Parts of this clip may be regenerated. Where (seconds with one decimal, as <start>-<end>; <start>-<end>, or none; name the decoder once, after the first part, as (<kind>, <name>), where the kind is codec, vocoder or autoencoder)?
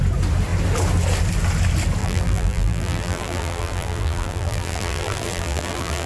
2.0-6.1 (vocoder, BigVGAN v2)